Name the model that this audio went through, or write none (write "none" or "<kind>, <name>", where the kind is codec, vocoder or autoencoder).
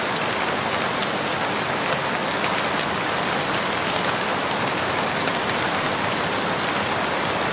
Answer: none